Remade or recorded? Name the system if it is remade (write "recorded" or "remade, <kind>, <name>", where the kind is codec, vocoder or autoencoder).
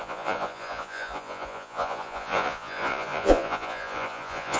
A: remade, vocoder, Vocos